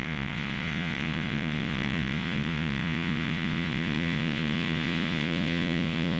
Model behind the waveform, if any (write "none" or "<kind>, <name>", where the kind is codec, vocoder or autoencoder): vocoder, Vocos